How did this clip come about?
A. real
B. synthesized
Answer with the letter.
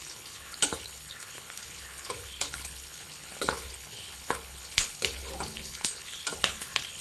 B